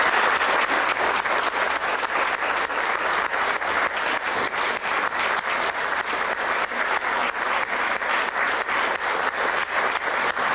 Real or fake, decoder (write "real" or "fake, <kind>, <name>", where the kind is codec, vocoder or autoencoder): real